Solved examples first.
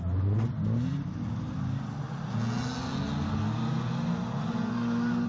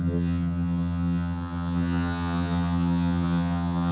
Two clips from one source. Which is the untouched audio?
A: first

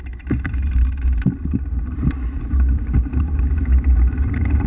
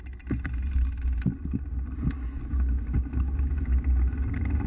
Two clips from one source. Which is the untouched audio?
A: second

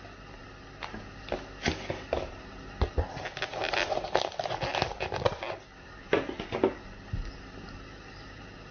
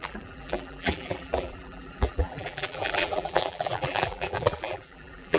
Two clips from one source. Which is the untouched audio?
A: first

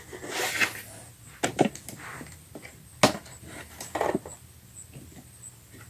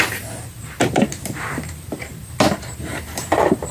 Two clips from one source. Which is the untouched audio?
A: first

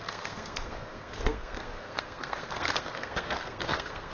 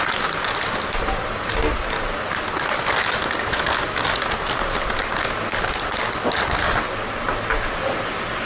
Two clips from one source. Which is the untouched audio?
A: second